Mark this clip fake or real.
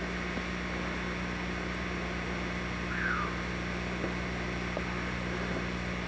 real